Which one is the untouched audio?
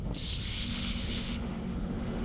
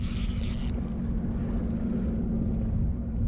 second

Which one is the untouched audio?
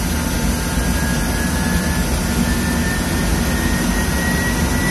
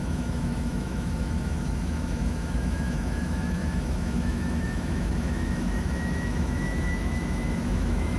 first